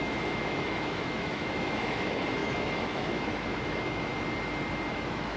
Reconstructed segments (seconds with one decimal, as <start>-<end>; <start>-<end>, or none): 0.0-4.1; 4.9-5.4